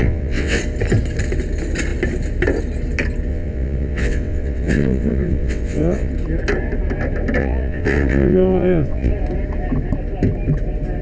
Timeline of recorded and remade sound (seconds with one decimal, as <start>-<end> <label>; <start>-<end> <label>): 0.0-0.6 remade; 0.6-3.3 recorded; 3.3-6.1 remade; 6.1-7.4 recorded; 7.4-9.1 remade; 9.1-11.0 recorded